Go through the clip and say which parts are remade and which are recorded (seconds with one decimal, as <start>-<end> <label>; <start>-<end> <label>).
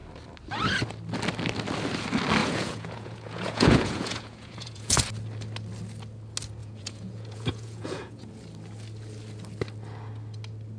0.0-2.4 recorded; 2.4-5.0 remade; 5.0-6.6 recorded; 6.6-8.3 remade; 8.3-10.8 recorded